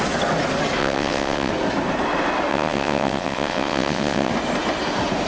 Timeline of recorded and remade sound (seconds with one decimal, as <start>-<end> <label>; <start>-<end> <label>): 0.0-0.8 recorded; 0.8-1.5 remade; 1.5-2.5 recorded; 2.5-4.3 remade; 4.3-5.3 recorded